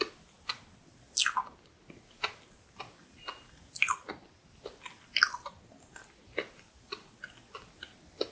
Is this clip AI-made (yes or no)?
no